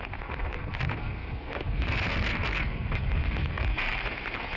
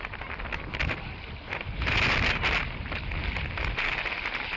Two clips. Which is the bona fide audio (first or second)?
second